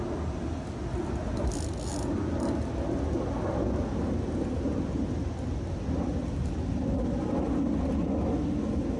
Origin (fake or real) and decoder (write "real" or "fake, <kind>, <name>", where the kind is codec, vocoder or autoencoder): real